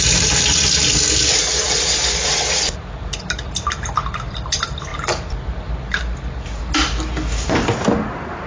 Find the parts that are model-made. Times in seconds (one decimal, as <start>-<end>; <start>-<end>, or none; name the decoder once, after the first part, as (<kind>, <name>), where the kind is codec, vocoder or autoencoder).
none